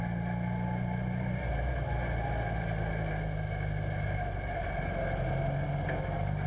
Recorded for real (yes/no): yes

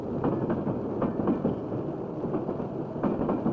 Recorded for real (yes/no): yes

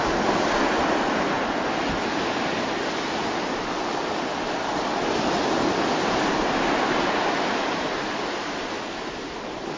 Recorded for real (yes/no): yes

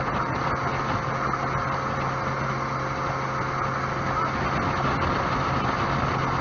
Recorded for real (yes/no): yes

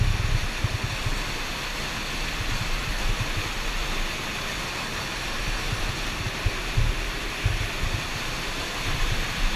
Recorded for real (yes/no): yes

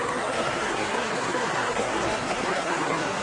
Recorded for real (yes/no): no